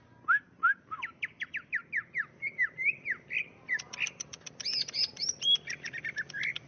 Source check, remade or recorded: remade